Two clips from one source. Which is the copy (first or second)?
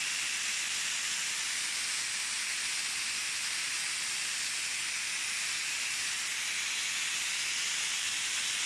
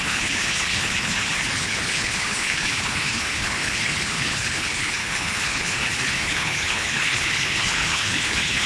second